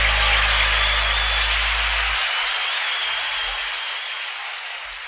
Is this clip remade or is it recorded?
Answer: recorded